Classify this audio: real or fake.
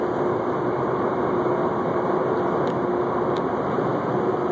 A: real